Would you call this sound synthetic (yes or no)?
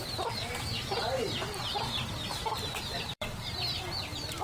yes